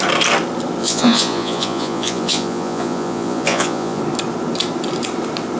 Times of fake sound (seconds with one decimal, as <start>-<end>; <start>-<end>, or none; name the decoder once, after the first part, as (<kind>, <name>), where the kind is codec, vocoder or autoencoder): 0.8-4.0 (vocoder, Vocos)

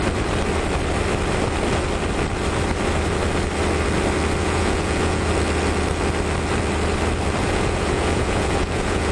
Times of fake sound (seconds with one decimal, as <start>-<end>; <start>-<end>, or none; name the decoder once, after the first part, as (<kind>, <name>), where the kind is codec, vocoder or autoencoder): 4.4-5.3 (vocoder, Vocos); 7.4-9.1